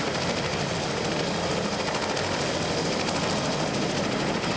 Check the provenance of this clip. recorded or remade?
recorded